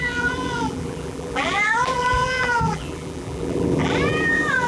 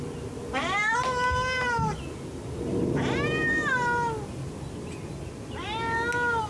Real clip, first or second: second